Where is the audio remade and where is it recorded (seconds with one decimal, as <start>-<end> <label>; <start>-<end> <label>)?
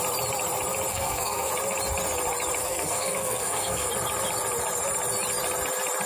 0.0-0.9 recorded; 0.9-1.5 remade; 1.5-2.6 recorded; 2.6-3.9 remade; 3.9-6.1 recorded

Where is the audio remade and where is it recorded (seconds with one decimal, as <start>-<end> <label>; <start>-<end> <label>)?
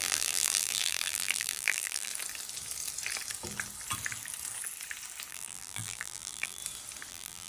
0.0-2.1 remade; 2.1-5.3 recorded; 5.3-6.6 remade; 6.6-7.1 recorded; 7.1-7.5 remade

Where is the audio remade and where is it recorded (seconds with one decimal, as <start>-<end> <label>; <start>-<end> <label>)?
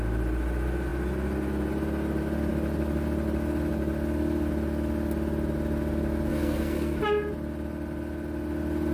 0.0-6.3 recorded; 6.3-7.0 remade; 7.0-8.9 recorded